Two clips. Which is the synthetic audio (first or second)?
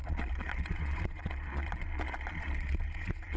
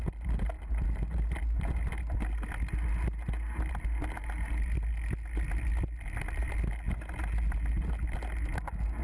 first